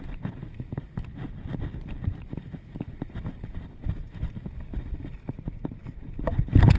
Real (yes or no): yes